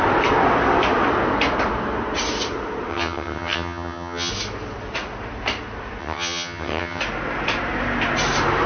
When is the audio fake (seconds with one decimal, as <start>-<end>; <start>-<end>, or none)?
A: 2.9-4.3; 6.0-7.0